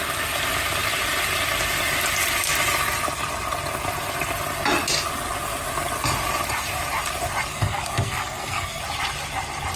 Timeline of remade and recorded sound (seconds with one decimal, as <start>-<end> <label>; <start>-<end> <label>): 0.0-7.5 recorded; 7.5-8.8 remade; 8.8-9.8 recorded